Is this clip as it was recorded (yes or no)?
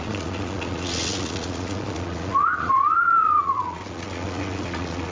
no